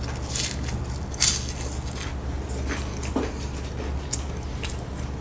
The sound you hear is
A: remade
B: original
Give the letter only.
B